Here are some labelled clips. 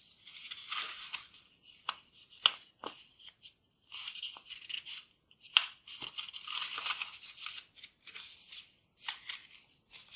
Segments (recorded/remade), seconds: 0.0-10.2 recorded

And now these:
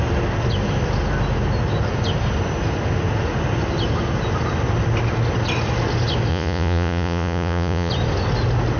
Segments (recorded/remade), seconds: 0.0-6.3 recorded; 6.3-7.9 remade; 7.9-8.8 recorded

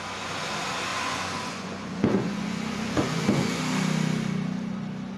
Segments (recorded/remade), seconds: 0.0-0.9 recorded; 0.9-3.6 remade; 3.6-5.2 recorded

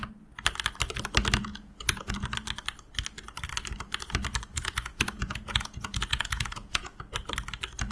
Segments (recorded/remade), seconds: 0.0-1.5 recorded; 1.5-2.1 remade; 2.1-4.5 recorded; 4.5-7.0 remade; 7.0-7.9 recorded

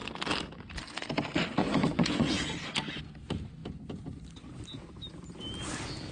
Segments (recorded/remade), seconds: 0.0-1.6 recorded; 1.6-2.3 remade; 2.3-6.1 recorded

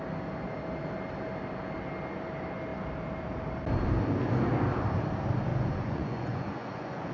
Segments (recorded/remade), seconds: 0.0-5.5 recorded; 5.5-7.1 remade